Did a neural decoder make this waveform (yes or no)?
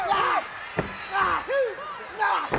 no